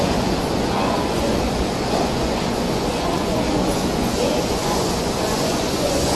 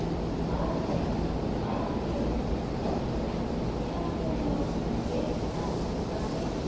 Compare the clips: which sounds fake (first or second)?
first